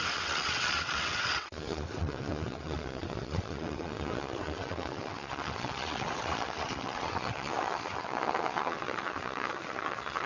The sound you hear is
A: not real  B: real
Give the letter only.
A